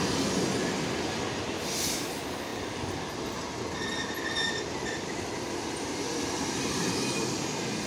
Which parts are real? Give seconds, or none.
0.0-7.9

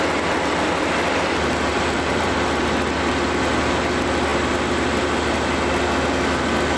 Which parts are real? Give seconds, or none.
0.0-1.7; 2.3-6.8

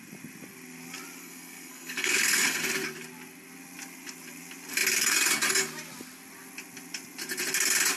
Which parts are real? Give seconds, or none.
0.0-1.2; 2.6-8.0

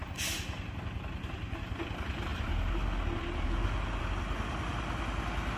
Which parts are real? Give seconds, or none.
0.0-5.6

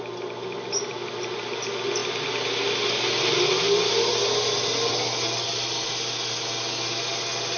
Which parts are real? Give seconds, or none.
0.0-7.6

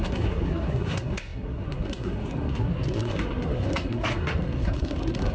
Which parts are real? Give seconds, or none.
none

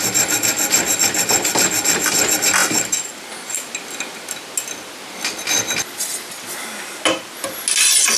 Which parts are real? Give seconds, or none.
0.0-8.2

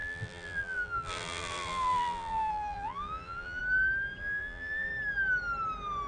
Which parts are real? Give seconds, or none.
3.6-4.2; 4.9-6.1